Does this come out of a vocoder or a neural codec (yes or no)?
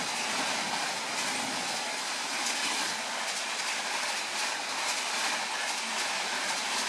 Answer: no